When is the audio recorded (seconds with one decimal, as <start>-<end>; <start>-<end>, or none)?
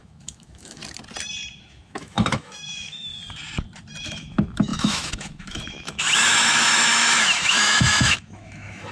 0.8-1.6; 3.1-4.0